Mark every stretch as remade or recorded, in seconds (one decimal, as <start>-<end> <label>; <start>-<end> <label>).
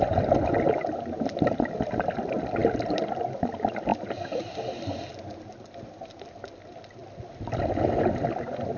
0.0-8.8 recorded